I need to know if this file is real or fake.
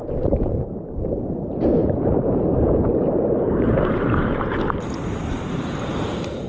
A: fake